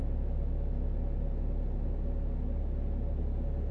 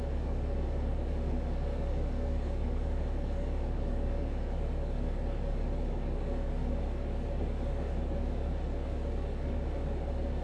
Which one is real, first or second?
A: first